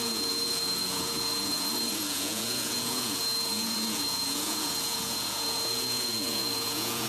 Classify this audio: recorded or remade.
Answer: remade